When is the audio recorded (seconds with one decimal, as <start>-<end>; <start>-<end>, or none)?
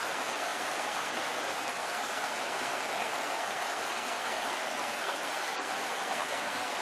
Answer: none